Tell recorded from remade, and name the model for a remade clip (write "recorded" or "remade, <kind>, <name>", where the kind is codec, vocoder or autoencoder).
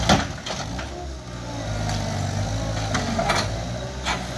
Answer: recorded